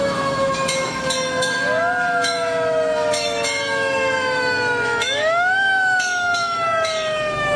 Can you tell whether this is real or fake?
fake